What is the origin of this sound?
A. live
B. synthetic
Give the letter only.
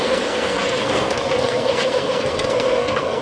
B